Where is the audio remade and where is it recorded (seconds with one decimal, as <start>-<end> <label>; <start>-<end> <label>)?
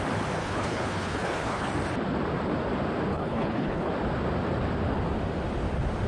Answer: 0.0-0.4 recorded; 0.4-1.7 remade; 1.7-3.1 recorded; 3.1-3.9 remade; 3.9-6.1 recorded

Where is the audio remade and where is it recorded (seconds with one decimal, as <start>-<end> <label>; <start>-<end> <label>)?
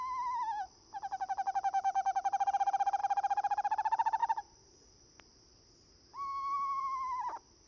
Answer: 0.0-7.7 recorded